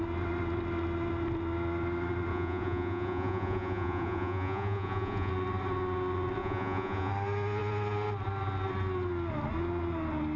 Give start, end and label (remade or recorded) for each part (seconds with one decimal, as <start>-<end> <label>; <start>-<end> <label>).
0.0-2.3 recorded; 2.3-5.3 remade; 5.3-6.4 recorded; 6.4-7.1 remade; 7.1-10.4 recorded